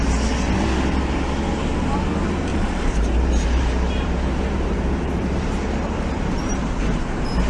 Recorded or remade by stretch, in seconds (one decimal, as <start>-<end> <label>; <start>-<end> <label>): 0.0-2.5 recorded; 2.5-7.0 remade; 7.0-7.5 recorded